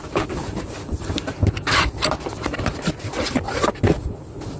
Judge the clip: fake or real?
real